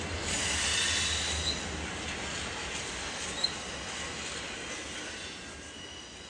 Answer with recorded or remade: recorded